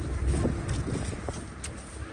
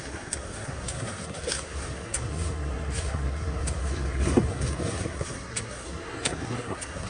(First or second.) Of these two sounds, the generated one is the second